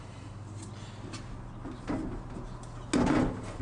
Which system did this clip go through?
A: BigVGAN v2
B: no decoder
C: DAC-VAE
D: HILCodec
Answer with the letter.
B